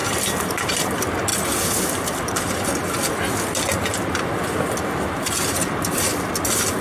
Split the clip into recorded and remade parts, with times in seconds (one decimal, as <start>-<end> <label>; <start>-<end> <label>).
0.0-1.3 remade; 1.3-5.2 recorded; 5.2-6.8 remade